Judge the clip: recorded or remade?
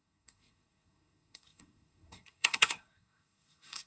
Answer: remade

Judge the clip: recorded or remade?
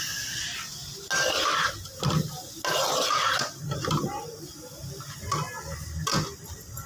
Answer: recorded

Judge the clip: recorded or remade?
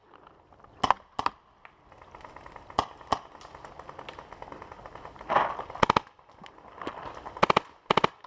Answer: recorded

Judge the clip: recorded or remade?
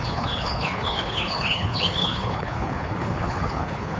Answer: remade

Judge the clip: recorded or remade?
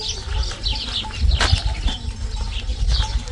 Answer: recorded